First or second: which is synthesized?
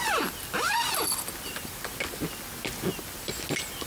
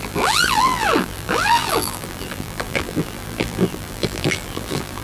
second